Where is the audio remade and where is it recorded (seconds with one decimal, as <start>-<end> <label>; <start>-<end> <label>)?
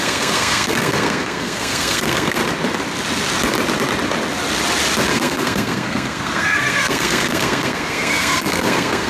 0.0-2.4 remade; 2.4-5.1 recorded; 5.1-9.1 remade